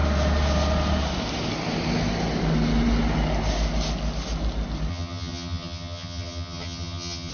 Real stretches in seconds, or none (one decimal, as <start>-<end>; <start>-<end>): 0.0-4.9